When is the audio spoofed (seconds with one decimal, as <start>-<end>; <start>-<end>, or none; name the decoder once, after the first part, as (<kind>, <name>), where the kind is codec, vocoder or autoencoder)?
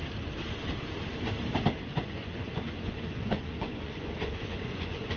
1.9-5.2 (vocoder, Vocos)